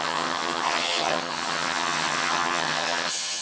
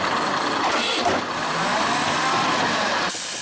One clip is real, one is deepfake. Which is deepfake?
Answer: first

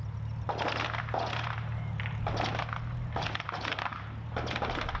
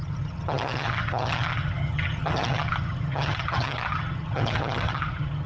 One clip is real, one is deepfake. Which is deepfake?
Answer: second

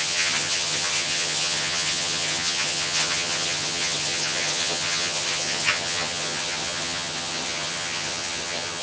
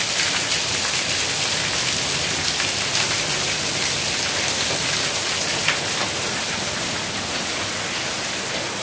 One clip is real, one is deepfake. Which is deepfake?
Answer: first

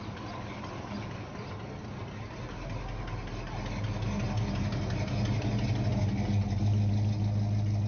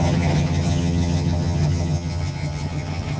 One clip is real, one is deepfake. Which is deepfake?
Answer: second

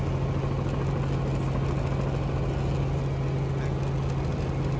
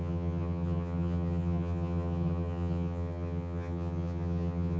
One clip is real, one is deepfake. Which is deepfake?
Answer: second